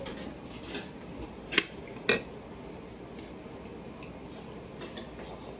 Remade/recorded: recorded